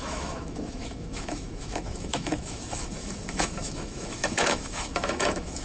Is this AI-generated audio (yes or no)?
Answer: yes